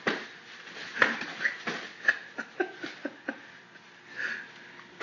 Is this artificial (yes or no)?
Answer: no